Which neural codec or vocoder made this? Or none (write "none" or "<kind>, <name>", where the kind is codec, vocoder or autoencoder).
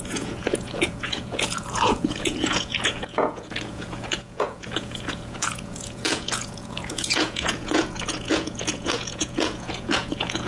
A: vocoder, Vocos